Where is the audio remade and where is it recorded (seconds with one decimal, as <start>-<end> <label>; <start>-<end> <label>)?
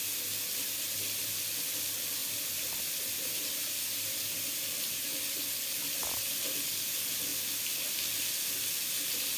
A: 0.0-2.2 recorded; 2.2-4.0 remade; 4.0-7.3 recorded; 7.3-8.9 remade; 8.9-9.4 recorded